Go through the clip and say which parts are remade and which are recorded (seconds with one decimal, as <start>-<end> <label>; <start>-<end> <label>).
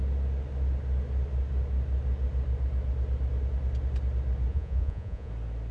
0.0-4.5 recorded; 4.5-5.3 remade; 5.3-5.7 recorded